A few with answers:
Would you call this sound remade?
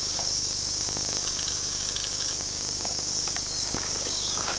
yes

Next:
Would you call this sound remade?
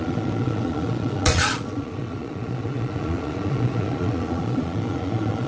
yes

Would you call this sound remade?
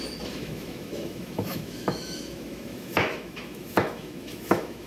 yes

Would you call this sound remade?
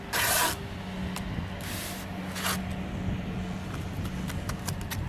no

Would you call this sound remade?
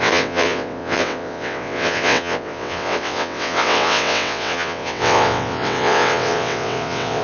yes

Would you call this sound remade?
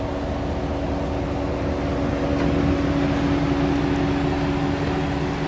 no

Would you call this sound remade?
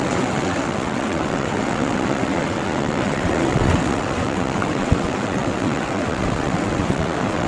yes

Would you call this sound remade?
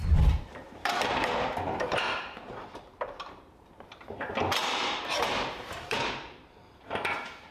yes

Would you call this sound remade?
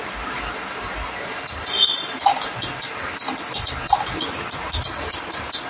no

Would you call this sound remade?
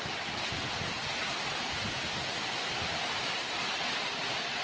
no